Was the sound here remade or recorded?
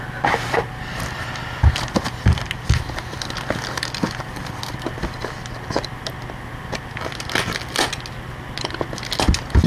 recorded